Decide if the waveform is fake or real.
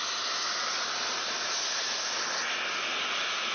real